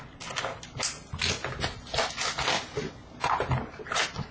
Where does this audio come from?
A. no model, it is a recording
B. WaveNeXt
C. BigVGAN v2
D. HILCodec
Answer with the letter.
A